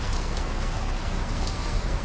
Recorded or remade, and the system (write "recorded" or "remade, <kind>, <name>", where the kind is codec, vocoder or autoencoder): remade, codec, SNAC